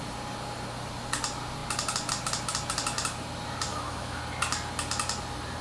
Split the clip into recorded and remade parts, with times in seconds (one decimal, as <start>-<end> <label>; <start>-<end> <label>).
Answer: 0.0-3.7 recorded; 3.7-4.2 remade; 4.2-5.6 recorded